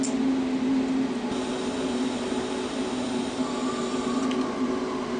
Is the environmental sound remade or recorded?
recorded